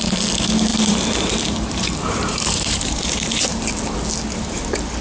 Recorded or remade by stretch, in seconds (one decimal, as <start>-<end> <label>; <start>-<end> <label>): 0.0-0.7 recorded; 0.7-3.7 remade; 3.7-5.0 recorded